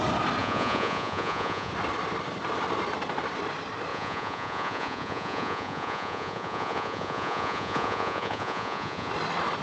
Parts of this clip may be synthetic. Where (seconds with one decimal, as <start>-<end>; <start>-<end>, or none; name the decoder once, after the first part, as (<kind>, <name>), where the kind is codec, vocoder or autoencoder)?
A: 0.4-1.7 (vocoder, Vocos); 3.9-9.1